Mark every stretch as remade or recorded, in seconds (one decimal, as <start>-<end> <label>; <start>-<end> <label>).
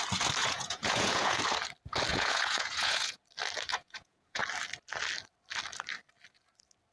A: 0.0-0.4 recorded; 0.4-1.4 remade; 1.4-2.1 recorded; 2.1-3.2 remade; 3.2-3.7 recorded; 3.7-4.4 remade; 4.4-6.9 recorded